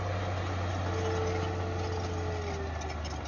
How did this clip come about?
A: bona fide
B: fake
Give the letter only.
A